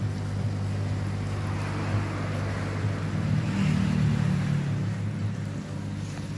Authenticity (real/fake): real